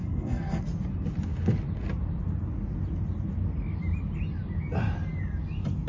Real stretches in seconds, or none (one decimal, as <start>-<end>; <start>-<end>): 0.6-5.9